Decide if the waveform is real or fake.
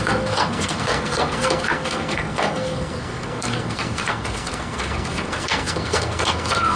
fake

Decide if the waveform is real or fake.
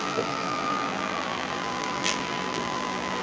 fake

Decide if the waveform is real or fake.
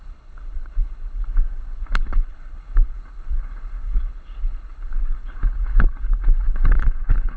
fake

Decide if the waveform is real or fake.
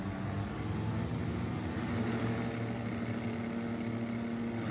real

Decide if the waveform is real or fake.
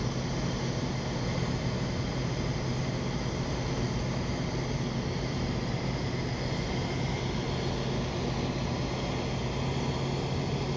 real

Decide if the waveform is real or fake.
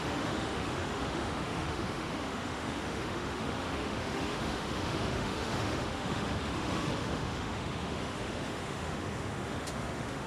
fake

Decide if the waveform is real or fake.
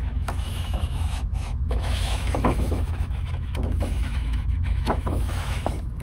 fake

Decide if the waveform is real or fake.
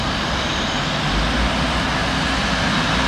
real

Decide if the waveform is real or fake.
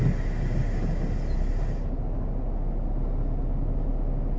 real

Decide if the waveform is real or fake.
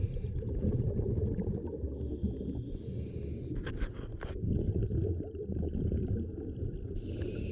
real